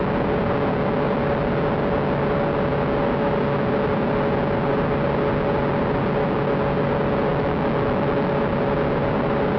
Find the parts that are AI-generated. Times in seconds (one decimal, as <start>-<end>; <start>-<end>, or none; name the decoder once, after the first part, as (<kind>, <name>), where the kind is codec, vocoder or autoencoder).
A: 7.3-8.3 (autoencoder, DAC-VAE)